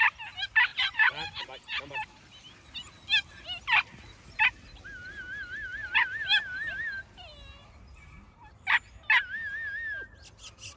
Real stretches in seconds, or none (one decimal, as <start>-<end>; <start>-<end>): 0.0-0.7; 1.4-10.8